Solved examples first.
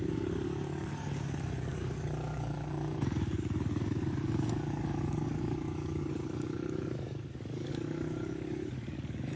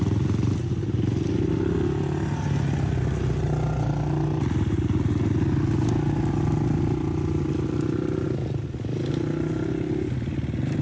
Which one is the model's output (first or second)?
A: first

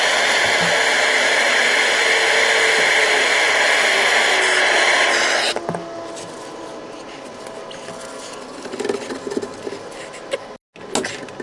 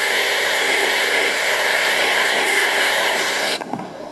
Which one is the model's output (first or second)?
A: second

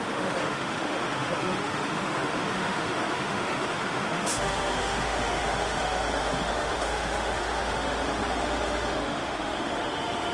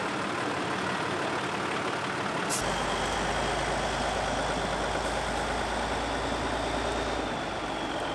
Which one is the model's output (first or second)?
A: first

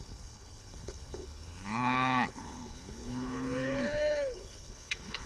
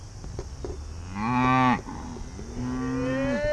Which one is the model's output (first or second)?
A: first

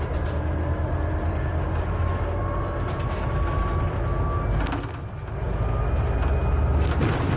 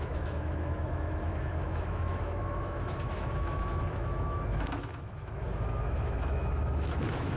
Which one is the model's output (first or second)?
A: second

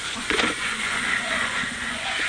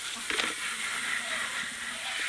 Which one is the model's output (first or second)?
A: first